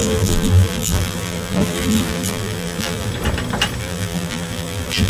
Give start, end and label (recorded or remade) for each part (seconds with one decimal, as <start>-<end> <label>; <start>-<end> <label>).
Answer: 0.0-3.1 remade; 3.1-3.8 recorded; 3.8-5.1 remade